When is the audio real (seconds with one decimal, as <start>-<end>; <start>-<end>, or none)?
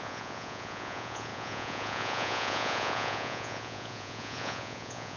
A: none